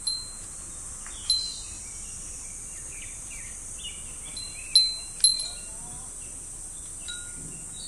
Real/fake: real